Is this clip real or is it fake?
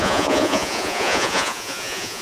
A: fake